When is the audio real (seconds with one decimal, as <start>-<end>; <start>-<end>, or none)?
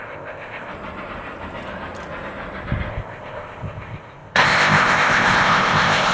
0.7-2.9